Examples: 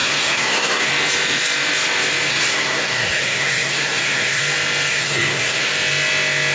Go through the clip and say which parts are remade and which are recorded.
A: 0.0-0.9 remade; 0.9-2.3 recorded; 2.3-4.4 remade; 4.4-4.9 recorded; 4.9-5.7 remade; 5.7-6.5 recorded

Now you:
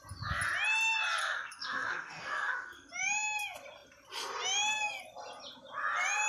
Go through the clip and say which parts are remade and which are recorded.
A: 0.0-1.2 recorded; 1.2-2.9 remade; 2.9-6.3 recorded

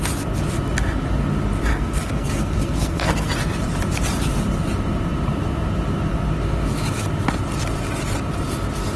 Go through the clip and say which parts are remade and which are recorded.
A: 0.0-1.7 recorded; 1.7-3.3 remade; 3.3-9.0 recorded

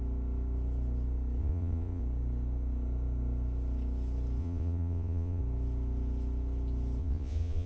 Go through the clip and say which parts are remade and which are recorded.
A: 0.0-1.4 recorded; 1.4-2.0 remade; 2.0-4.4 recorded; 4.4-5.4 remade; 5.4-7.0 recorded; 7.0-7.7 remade

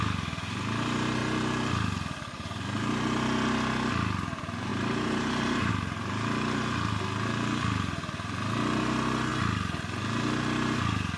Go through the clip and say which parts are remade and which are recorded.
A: 0.0-4.7 recorded; 4.7-5.7 remade; 5.7-11.2 recorded